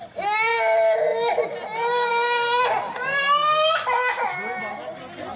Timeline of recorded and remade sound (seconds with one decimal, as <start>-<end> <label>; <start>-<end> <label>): 0.0-5.4 recorded